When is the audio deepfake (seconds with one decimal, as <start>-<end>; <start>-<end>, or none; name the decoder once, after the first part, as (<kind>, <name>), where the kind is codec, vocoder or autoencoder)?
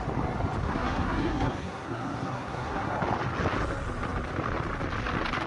0.6-3.0 (codec, SNAC)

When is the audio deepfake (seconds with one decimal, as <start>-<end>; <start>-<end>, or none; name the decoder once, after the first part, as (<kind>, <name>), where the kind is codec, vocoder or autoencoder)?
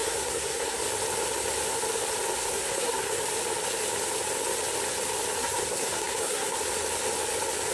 0.0-0.8 (codec, SNAC); 2.4-3.2; 5.4-6.6